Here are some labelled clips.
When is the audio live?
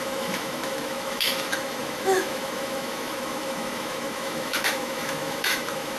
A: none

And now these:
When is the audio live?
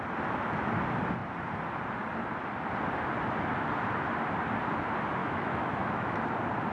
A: 0.0-5.2; 6.2-6.7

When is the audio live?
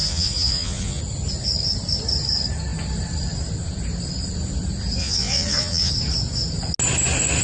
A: 1.0-5.0; 5.9-7.4